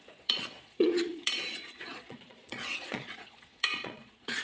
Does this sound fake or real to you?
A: fake